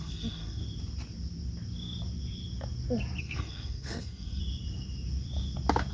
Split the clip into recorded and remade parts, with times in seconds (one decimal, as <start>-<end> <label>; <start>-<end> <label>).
0.0-0.6 remade; 0.6-3.2 recorded; 3.2-4.4 remade; 4.4-5.9 recorded